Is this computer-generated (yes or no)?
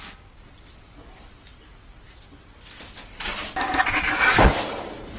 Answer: no